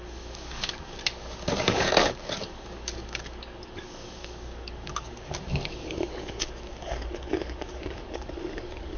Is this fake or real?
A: fake